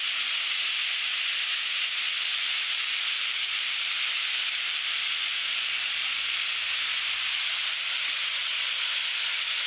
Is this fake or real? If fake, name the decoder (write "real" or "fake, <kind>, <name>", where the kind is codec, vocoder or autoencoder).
real